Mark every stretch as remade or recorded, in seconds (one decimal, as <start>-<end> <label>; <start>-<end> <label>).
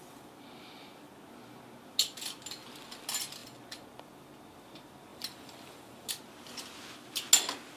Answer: 0.0-5.1 recorded; 5.1-6.1 remade; 6.1-7.8 recorded